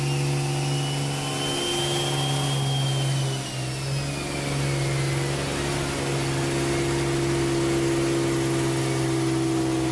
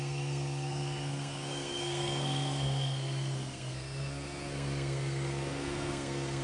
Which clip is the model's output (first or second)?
second